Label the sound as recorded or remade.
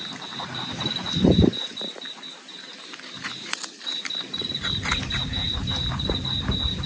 recorded